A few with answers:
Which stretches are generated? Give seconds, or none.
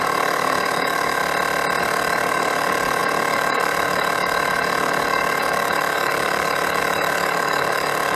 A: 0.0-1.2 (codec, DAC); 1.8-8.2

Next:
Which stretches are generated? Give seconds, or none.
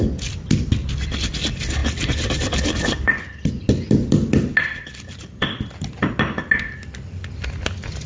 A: none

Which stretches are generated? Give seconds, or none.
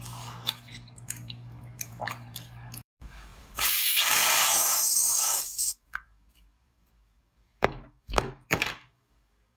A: 0.0-9.6 (codec, DAC)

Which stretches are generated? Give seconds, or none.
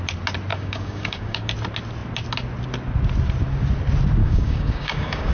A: 0.5-1.5 (codec, DAC); 4.2-5.3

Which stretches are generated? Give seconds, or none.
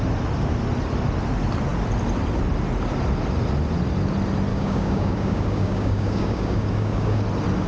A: 4.5-7.2 (codec, DAC)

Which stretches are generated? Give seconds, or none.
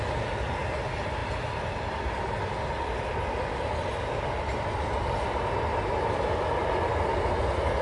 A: none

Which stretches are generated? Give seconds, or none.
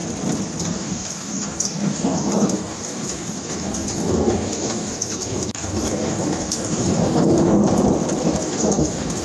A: 0.6-7.6 (codec, DAC); 8.2-9.2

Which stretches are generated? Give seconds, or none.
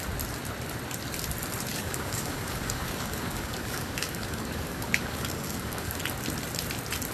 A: 1.7-6.0 (codec, DAC)